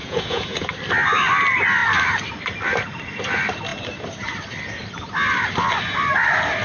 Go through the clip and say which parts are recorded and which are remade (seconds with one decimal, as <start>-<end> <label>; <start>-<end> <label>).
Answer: 0.0-0.7 remade; 0.7-6.6 recorded